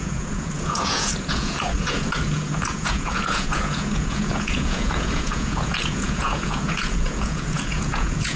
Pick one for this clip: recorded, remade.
remade